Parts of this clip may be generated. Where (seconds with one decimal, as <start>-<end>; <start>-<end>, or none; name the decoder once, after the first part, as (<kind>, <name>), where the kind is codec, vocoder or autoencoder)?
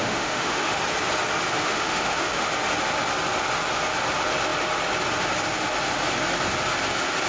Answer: 0.0-0.8 (autoencoder, DAC-VAE); 1.6-2.5